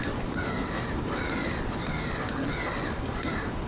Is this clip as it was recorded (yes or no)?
no